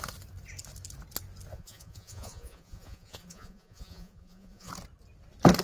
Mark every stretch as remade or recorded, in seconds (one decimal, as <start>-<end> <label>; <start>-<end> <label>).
0.0-1.5 recorded; 1.5-4.7 remade; 4.7-5.6 recorded